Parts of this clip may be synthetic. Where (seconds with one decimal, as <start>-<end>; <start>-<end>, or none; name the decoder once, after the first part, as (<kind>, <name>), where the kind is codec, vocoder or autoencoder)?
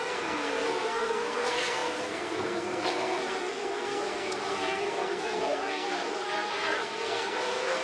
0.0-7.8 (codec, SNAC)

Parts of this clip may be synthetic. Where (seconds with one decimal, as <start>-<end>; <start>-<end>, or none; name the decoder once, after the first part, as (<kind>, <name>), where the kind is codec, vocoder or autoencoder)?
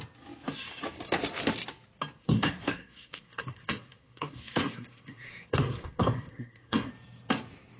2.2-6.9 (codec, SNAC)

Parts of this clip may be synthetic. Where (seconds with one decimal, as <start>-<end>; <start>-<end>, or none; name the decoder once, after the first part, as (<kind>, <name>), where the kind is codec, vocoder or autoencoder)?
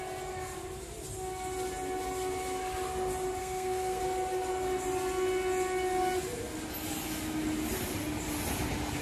3.4-4.0 (codec, SNAC)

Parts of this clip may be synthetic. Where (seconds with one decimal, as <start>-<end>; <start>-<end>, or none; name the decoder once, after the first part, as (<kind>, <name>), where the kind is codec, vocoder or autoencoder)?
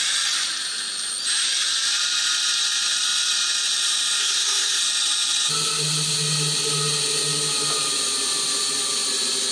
4.2-4.8 (codec, SNAC)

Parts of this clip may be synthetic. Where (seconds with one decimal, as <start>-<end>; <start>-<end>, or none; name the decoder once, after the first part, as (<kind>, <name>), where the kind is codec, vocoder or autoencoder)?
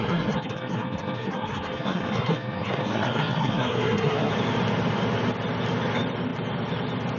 0.0-4.3 (codec, SNAC)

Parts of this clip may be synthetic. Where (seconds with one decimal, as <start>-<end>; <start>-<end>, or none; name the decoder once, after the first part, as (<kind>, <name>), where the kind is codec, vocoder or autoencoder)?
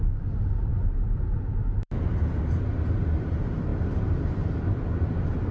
none